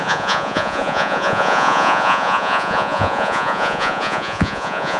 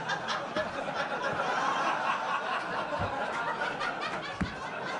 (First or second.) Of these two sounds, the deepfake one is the first